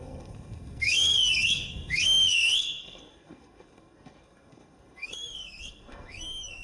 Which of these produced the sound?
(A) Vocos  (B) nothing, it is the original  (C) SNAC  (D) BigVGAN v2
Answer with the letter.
C